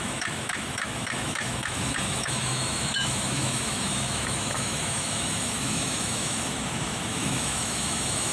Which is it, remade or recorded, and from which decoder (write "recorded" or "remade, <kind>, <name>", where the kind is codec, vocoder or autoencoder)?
remade, autoencoder, DAC-VAE